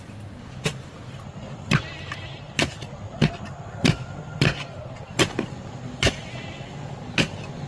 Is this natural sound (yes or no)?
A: yes